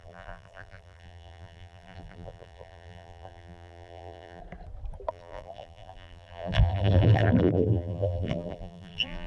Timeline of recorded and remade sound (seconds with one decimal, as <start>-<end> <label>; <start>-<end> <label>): 0.0-4.4 remade; 4.4-5.1 recorded; 5.1-9.3 remade